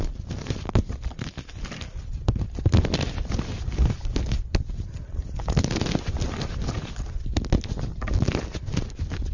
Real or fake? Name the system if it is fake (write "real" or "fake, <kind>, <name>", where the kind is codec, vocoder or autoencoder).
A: real